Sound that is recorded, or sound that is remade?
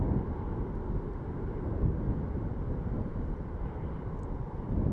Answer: recorded